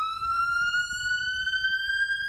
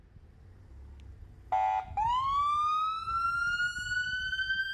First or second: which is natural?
second